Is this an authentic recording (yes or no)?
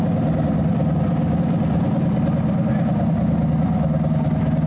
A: yes